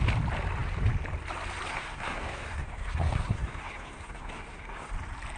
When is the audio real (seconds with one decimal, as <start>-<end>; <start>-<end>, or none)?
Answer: 0.0-1.7; 4.9-5.4